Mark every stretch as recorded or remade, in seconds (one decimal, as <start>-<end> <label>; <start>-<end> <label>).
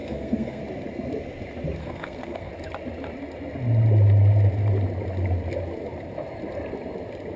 0.0-0.6 remade; 0.6-1.8 recorded; 1.8-2.5 remade; 2.5-7.4 recorded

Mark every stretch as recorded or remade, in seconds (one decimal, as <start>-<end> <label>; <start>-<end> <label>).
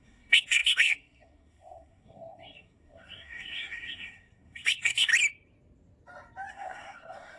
0.0-5.1 remade; 5.1-6.5 recorded; 6.5-7.4 remade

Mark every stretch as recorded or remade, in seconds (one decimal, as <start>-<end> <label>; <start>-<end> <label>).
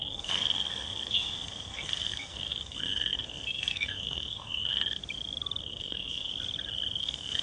0.0-5.0 remade; 5.0-5.6 recorded; 5.6-6.3 remade; 6.3-7.0 recorded; 7.0-7.4 remade